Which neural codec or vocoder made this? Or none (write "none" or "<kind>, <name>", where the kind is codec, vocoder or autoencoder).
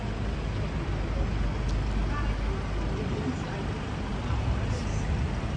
none